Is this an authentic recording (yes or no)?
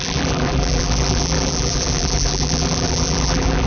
no